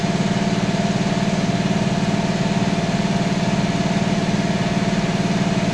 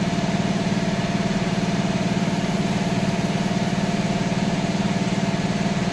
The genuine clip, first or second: first